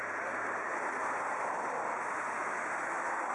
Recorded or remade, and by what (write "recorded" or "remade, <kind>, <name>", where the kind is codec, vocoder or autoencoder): recorded